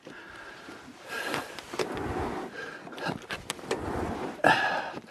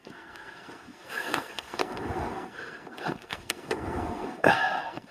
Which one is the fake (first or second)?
second